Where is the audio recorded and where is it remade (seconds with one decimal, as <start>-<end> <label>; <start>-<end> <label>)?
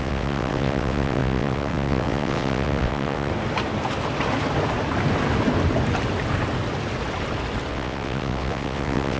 0.0-3.3 remade; 3.3-7.7 recorded; 7.7-9.2 remade